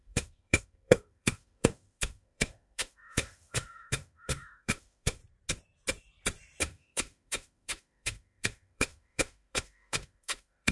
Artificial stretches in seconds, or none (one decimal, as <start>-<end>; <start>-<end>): 0.0-5.2; 6.6-10.7

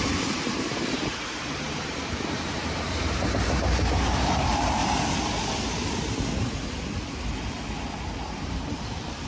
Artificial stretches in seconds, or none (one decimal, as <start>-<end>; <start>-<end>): 0.0-4.8; 8.4-9.3

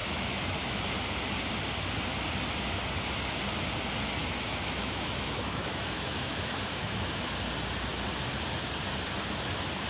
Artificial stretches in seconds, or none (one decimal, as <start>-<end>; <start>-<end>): 0.0-0.8; 4.2-7.2

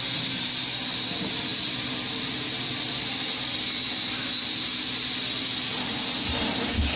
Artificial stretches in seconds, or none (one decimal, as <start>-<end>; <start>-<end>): none

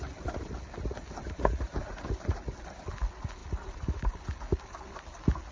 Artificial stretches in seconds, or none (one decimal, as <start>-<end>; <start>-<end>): none

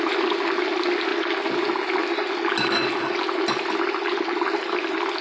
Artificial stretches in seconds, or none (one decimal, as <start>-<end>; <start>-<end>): none

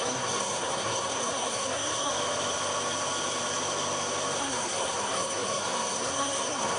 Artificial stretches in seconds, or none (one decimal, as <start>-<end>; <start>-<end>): 0.0-2.1; 4.4-6.8